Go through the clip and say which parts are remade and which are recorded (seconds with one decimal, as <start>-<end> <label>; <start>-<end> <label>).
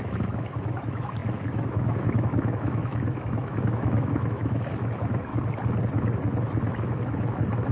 0.0-5.3 remade; 5.3-6.7 recorded; 6.7-7.7 remade